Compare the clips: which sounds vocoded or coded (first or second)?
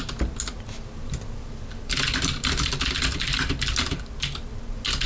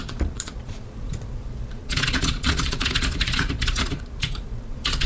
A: second